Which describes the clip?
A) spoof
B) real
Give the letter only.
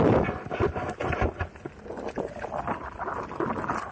B